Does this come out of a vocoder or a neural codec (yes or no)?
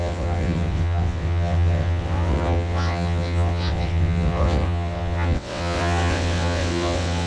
yes